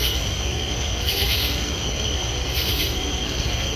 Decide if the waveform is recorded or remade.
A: remade